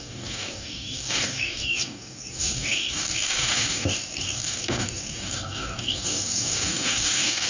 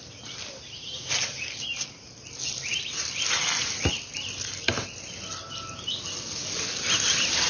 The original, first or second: second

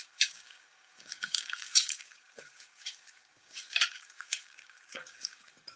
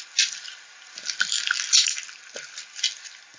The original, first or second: second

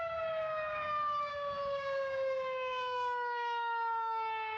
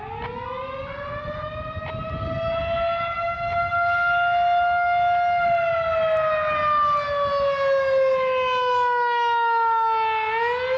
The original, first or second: second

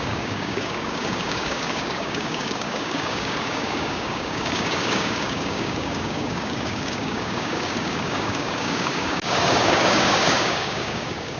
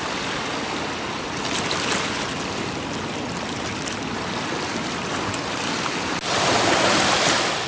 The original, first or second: second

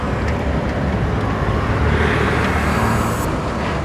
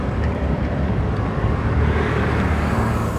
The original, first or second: first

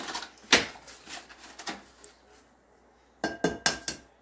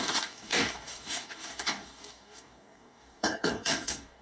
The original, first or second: first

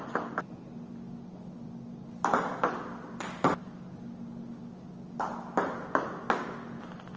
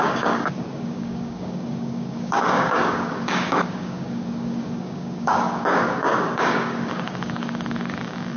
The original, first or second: first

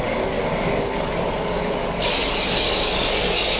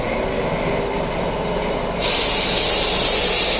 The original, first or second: second